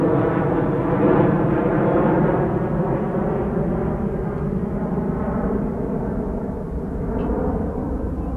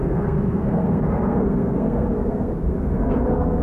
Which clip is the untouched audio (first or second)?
first